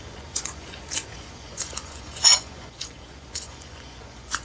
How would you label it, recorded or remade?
remade